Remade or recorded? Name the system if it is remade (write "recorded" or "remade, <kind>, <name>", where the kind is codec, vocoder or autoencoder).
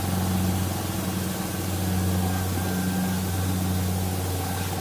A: recorded